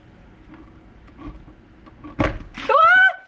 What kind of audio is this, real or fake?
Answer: real